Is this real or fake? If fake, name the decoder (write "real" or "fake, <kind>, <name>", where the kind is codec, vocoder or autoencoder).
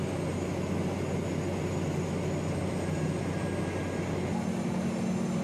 real